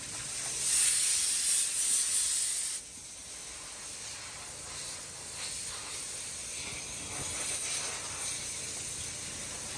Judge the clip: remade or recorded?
recorded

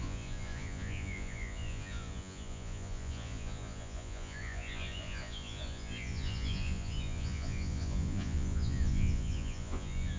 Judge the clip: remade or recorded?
remade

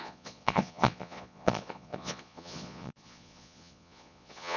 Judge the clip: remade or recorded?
remade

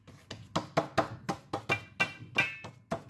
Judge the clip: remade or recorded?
recorded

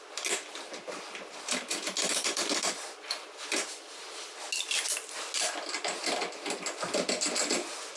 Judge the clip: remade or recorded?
recorded